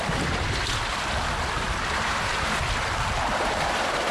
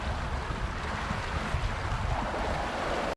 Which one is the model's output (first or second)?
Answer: first